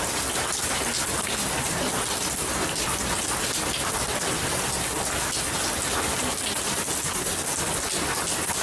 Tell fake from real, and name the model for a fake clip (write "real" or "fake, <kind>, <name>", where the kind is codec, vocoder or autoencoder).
real